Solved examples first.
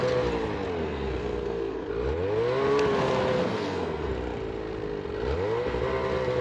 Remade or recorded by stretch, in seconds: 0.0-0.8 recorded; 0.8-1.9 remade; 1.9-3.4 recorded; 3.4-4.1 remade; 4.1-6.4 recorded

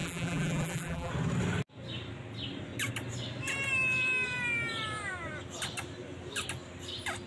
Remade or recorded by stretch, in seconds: 0.0-1.1 remade; 1.1-7.3 recorded

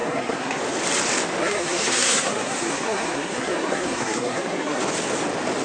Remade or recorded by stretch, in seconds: 0.0-0.6 remade; 0.6-1.4 recorded; 1.4-4.8 remade; 4.8-5.6 recorded

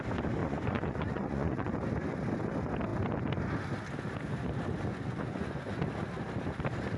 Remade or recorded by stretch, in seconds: 0.0-0.4 recorded; 0.4-1.7 remade; 1.7-4.9 recorded; 4.9-5.8 remade; 5.8-7.0 recorded

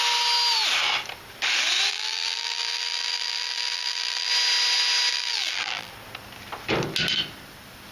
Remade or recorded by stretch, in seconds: 0.0-1.9 recorded; 1.9-4.3 remade; 4.3-5.1 recorded; 5.1-5.9 remade; 5.9-7.9 recorded

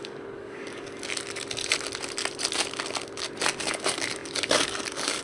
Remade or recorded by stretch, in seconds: 0.0-1.1 remade; 1.1-3.6 recorded; 3.6-5.2 remade

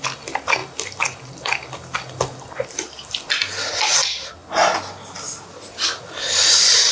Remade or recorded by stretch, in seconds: 0.0-6.9 recorded

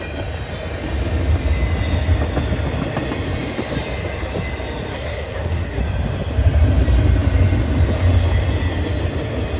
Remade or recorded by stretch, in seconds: 0.0-4.9 recorded; 4.9-5.8 remade; 5.8-9.6 recorded